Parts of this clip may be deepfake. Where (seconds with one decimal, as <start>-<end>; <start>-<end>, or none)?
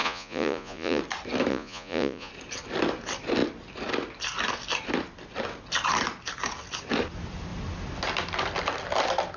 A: 0.0-1.0; 1.5-2.3